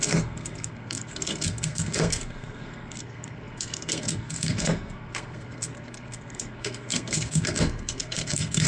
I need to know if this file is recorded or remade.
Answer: remade